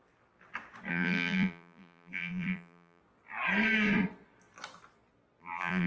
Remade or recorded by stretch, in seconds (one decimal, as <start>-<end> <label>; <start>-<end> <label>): 0.0-0.9 recorded; 0.9-3.0 remade; 3.0-5.4 recorded; 5.4-5.9 remade